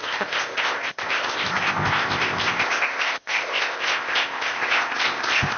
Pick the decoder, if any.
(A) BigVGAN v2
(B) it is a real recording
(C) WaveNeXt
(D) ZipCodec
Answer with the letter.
D